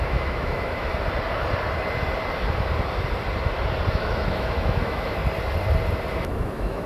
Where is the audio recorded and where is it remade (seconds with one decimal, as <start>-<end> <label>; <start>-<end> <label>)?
0.0-0.9 remade; 0.9-3.9 recorded; 3.9-5.2 remade; 5.2-6.1 recorded; 6.1-6.9 remade